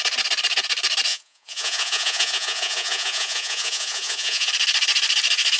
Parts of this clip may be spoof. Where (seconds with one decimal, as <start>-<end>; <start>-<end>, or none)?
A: 1.1-4.5